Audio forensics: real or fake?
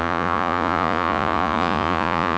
fake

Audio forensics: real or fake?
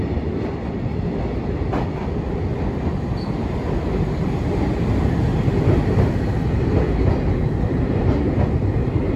real